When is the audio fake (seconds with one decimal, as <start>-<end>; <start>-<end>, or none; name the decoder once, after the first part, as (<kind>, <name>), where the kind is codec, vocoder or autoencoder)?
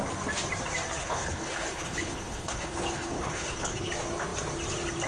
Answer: 1.0-3.9 (codec, HILCodec)